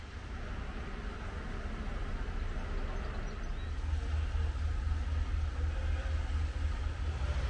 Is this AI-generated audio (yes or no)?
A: no